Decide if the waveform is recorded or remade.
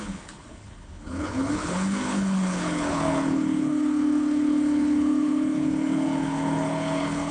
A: remade